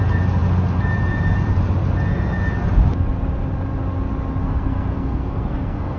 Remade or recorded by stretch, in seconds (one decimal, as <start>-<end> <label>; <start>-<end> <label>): 0.0-4.4 recorded; 4.4-6.0 remade